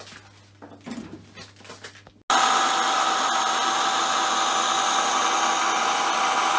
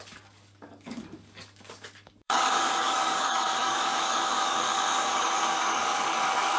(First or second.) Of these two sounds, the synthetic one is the second